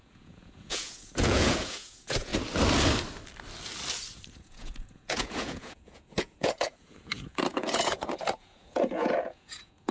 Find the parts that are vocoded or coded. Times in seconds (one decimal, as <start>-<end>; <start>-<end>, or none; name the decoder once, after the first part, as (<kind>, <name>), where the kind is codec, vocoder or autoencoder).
0.0-2.3 (vocoder, Vocos); 4.3-9.9